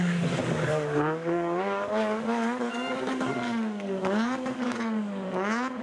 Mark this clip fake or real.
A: fake